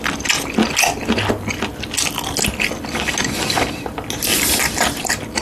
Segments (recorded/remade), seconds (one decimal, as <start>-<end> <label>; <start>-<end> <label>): 0.0-4.3 recorded; 4.3-5.4 remade